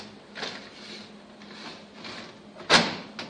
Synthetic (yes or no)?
no